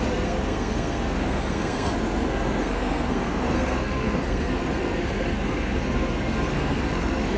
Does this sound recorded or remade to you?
remade